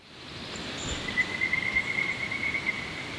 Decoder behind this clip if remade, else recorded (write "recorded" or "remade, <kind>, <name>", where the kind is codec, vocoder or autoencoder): recorded